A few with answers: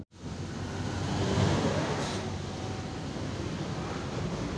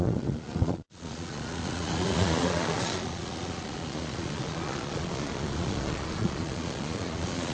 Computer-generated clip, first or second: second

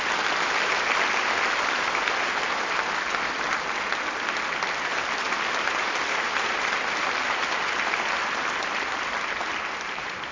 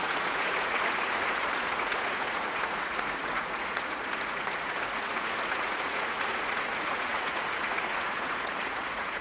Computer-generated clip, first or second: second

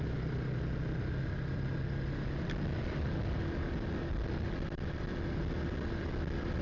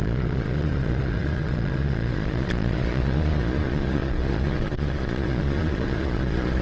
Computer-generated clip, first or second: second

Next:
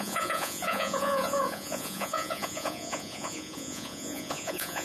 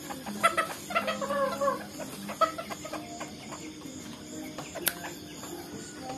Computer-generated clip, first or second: first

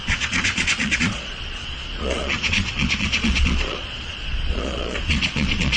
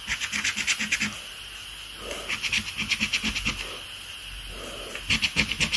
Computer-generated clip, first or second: first